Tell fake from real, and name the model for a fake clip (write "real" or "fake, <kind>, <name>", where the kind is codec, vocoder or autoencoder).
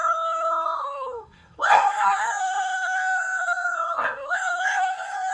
fake, codec, SNAC